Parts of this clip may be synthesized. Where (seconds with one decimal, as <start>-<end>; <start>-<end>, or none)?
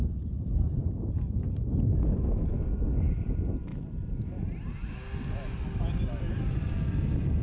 none